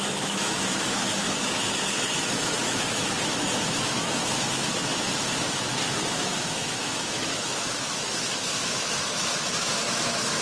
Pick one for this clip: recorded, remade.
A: remade